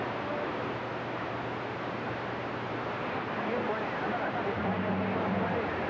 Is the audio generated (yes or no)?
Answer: no